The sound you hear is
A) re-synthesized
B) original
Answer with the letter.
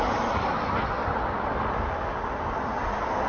B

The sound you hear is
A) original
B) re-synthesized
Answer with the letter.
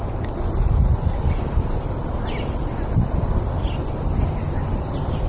B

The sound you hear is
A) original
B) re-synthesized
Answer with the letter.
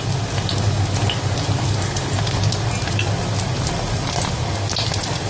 A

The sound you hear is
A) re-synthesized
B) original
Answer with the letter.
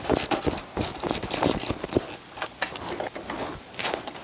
B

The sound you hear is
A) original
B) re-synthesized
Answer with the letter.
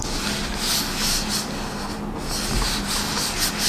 A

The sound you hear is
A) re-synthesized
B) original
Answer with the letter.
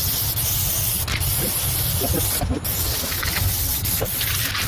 B